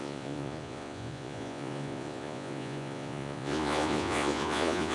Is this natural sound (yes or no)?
no